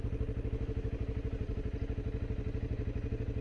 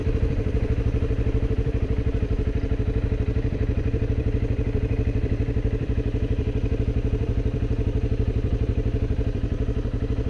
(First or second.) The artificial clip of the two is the second